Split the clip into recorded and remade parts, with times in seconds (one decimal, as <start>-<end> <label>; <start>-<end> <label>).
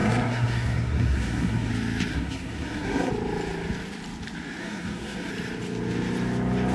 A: 0.0-1.7 remade; 1.7-2.1 recorded; 2.1-3.1 remade; 3.1-4.6 recorded; 4.6-5.3 remade; 5.3-6.7 recorded